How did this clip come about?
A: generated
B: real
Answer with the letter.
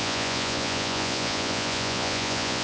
A